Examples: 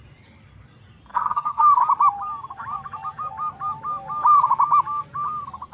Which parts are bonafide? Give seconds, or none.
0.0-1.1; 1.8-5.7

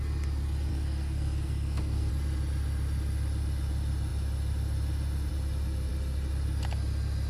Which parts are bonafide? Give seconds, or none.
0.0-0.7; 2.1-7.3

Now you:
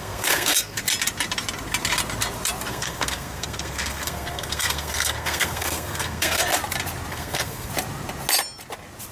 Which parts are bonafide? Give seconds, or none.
0.8-2.7; 6.5-7.1; 7.7-9.1

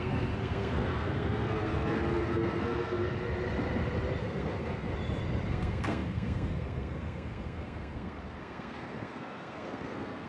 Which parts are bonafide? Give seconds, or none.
3.1-4.2; 4.9-5.5

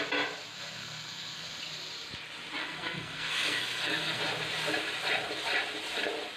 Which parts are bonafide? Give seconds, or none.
0.0-0.5; 1.6-2.6; 4.2-6.4

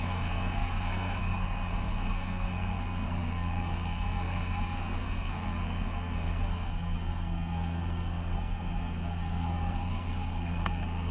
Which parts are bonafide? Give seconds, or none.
none